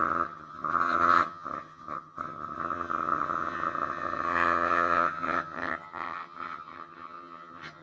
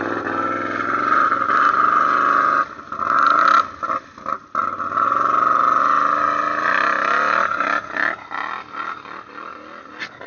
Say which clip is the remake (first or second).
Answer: first